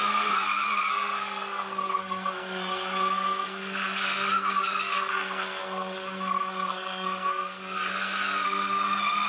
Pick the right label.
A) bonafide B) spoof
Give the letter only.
B